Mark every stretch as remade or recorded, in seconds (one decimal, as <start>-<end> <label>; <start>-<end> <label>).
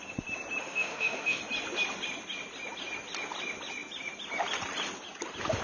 0.0-0.6 recorded; 0.6-1.4 remade; 1.4-5.6 recorded